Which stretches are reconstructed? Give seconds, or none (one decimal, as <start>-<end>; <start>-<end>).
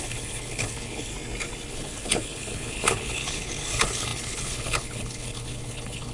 0.0-1.1; 1.7-6.1